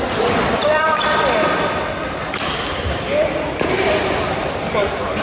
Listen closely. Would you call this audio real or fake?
fake